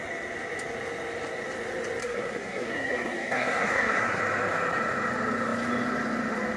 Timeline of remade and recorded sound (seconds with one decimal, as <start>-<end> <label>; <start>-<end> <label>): 0.0-2.0 recorded; 2.0-4.2 remade; 4.2-6.6 recorded